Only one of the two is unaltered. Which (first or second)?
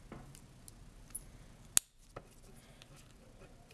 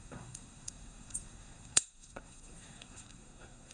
first